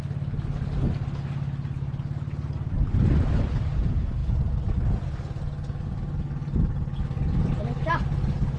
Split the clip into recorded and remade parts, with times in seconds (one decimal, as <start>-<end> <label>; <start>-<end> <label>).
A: 0.0-8.6 recorded